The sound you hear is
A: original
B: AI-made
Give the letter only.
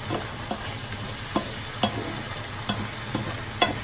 A